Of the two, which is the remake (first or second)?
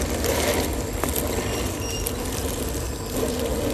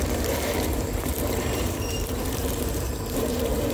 second